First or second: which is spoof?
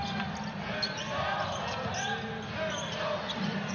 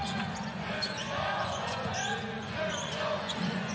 second